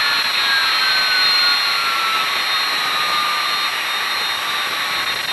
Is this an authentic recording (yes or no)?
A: yes